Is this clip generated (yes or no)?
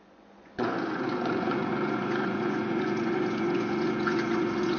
yes